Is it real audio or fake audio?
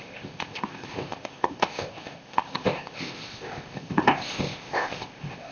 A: fake